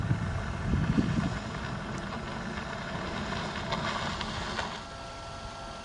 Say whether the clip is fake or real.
real